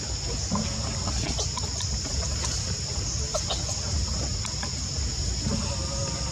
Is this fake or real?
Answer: real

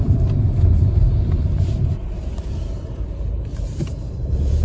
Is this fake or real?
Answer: fake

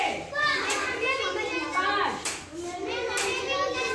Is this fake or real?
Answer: real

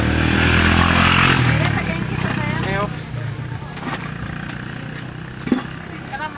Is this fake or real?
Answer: real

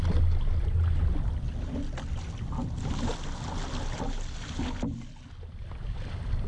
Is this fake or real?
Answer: real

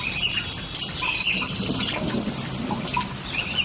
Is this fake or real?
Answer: real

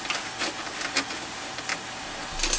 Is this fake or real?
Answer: real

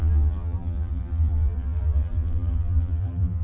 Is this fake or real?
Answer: fake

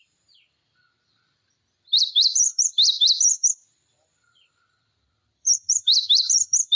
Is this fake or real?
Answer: fake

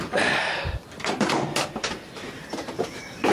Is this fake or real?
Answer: fake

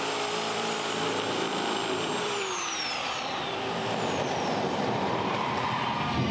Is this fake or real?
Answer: fake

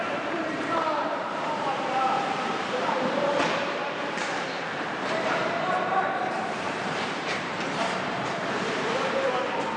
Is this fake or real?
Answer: fake